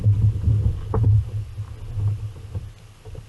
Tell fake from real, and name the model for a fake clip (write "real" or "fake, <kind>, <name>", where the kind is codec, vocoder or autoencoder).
real